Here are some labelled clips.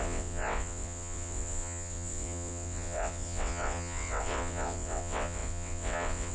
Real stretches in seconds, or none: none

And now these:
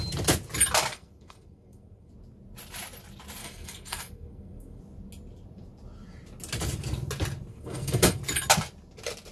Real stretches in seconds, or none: 0.0-0.9; 2.1-3.4; 4.8-7.5; 8.2-9.3

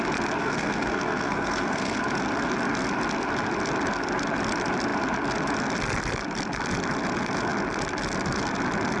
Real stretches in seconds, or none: 0.0-0.4; 2.0-9.0